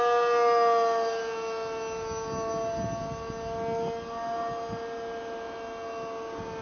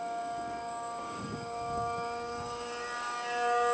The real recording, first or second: first